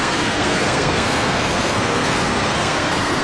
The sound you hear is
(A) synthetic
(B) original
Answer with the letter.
A